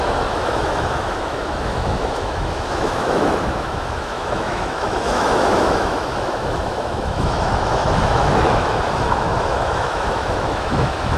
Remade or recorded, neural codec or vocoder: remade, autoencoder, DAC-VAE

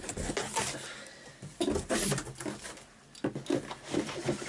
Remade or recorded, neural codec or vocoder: recorded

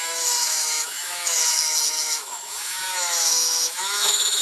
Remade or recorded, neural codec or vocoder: remade, autoencoder, DAC-VAE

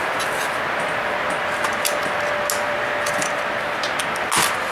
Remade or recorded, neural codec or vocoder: recorded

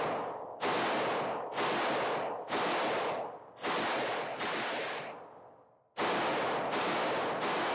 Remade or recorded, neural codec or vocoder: recorded